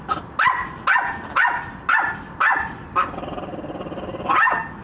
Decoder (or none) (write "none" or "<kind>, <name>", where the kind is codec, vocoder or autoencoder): none